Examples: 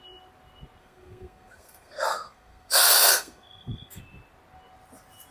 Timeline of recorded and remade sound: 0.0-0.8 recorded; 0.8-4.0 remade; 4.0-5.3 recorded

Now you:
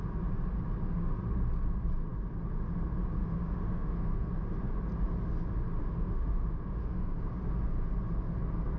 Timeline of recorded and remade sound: 0.0-3.2 recorded; 3.2-4.3 remade; 4.3-5.8 recorded; 5.8-7.2 remade; 7.2-8.8 recorded

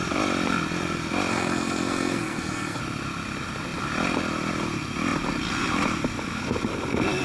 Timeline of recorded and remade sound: 0.0-1.3 recorded; 1.3-2.8 remade; 2.8-7.2 recorded

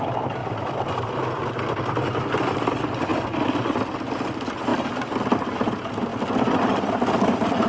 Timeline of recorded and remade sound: 0.0-7.7 recorded